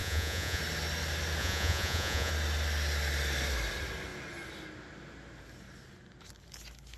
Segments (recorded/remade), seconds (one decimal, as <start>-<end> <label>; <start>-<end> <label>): 0.0-0.6 remade; 0.6-1.4 recorded; 1.4-2.3 remade; 2.3-7.0 recorded